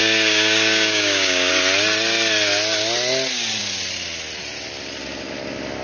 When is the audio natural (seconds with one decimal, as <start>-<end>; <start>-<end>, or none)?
1.5-5.8